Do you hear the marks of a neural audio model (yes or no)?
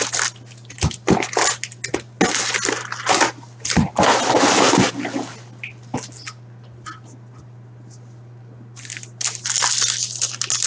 no